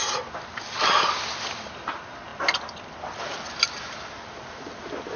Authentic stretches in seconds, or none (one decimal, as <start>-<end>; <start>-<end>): none